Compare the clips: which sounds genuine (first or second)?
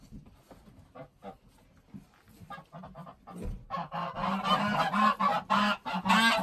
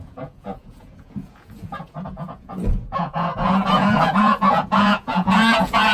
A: first